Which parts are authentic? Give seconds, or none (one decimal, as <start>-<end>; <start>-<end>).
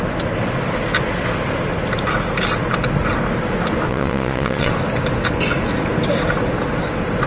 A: 0.0-3.9; 4.7-7.3